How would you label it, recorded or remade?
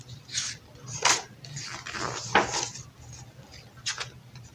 recorded